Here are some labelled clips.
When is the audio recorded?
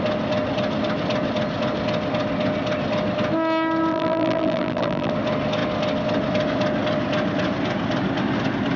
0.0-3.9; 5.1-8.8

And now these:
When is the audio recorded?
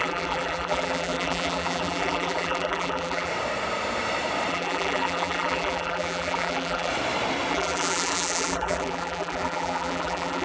3.3-4.5; 6.9-7.5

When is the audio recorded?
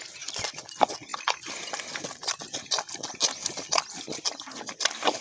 0.0-5.2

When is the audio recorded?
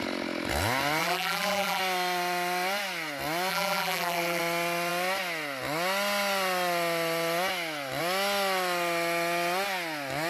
0.0-1.0; 1.8-3.5; 4.4-10.3